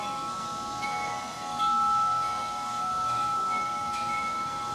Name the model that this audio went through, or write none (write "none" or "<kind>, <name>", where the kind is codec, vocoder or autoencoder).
codec, SNAC